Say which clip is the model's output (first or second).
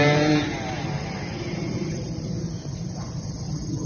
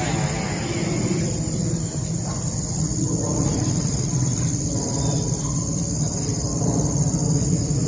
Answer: first